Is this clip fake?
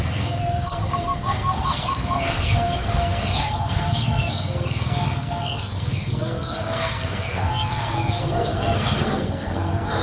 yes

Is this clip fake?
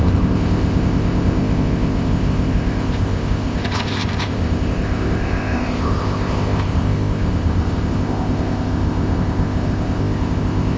yes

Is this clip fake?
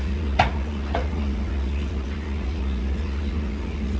yes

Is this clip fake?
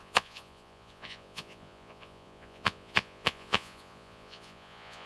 yes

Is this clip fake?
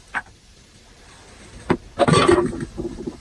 no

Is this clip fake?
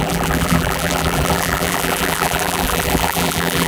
yes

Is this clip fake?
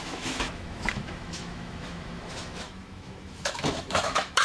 yes